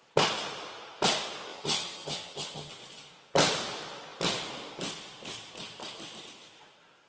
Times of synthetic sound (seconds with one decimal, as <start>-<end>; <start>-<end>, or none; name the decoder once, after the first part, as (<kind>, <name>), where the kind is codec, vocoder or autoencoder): 1.5-2.7 (vocoder, HiFi-GAN)